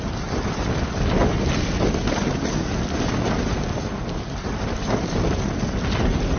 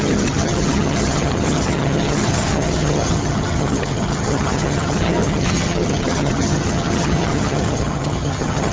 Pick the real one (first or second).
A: first